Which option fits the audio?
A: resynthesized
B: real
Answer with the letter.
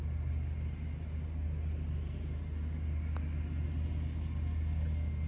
B